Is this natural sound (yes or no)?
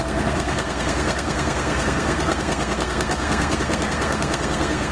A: no